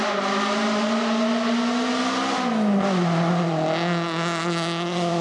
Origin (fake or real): real